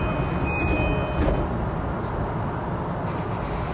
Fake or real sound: real